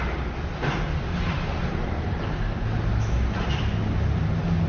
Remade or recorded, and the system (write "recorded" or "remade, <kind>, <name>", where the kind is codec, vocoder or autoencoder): recorded